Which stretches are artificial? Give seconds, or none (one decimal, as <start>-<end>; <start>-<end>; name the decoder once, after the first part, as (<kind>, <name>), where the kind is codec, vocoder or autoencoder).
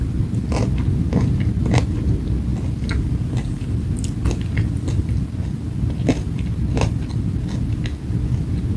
none